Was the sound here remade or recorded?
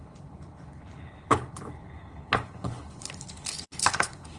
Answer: remade